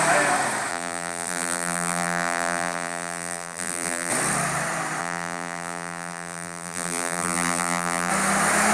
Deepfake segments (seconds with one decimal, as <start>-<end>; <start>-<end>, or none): 0.7-4.1; 5.0-8.1